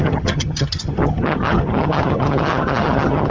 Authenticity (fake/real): fake